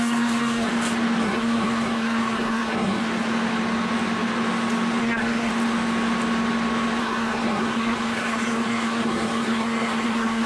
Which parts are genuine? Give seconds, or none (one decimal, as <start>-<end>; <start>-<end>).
0.7-1.2; 3.0-5.0; 5.5-7.0

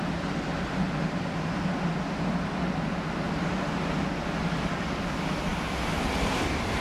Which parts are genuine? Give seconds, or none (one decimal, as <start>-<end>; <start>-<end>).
0.0-6.8